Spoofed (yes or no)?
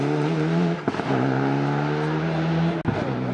no